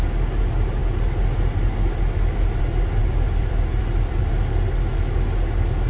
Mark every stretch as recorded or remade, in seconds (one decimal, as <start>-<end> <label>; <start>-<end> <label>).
0.0-3.0 recorded; 3.0-4.3 remade; 4.3-5.9 recorded